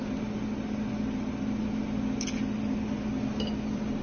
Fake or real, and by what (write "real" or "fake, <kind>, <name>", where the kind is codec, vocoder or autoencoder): real